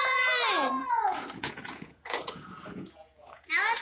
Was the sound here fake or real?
fake